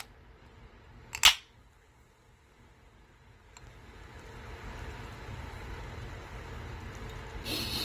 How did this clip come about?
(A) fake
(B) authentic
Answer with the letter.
B